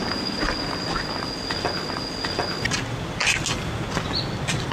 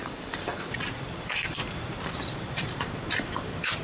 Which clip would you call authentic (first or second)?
first